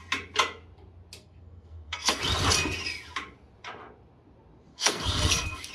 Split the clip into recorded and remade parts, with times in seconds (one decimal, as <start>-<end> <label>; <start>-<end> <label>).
0.0-1.2 recorded; 1.2-2.2 remade; 2.2-4.7 recorded; 4.7-5.7 remade